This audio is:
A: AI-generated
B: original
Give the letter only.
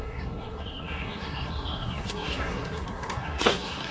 A